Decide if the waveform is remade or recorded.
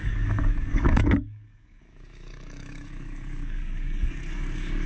remade